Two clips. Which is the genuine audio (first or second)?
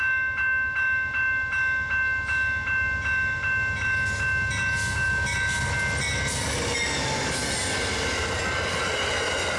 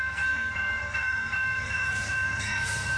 first